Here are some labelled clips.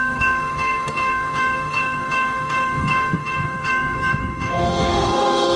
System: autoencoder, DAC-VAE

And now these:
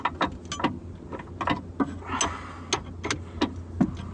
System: none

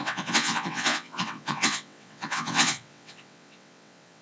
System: vocoder, WaveNeXt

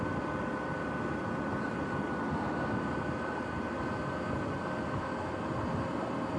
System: none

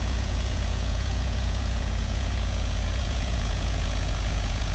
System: vocoder, Vocos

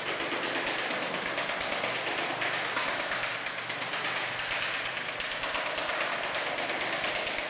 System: none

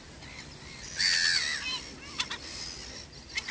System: none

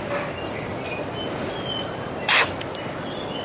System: none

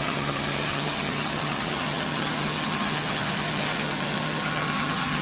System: vocoder, HiFi-GAN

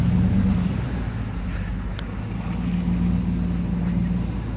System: none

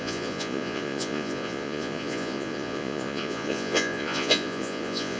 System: vocoder, Vocos